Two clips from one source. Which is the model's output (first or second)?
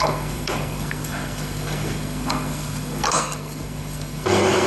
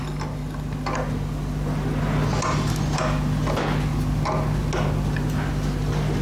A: first